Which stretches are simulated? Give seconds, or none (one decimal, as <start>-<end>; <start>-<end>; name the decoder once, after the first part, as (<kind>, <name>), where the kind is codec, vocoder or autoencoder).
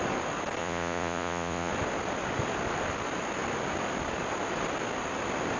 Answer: 0.6-1.7 (vocoder, Vocos)